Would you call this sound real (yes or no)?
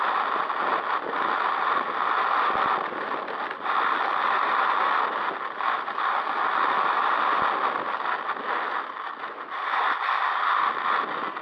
yes